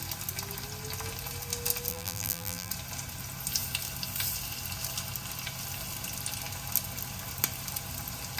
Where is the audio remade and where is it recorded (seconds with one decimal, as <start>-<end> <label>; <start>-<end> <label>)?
0.0-1.9 recorded; 1.9-2.7 remade; 2.7-8.4 recorded